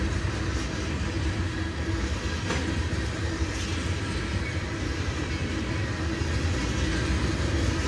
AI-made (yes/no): no